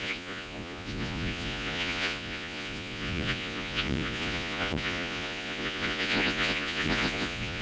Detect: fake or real fake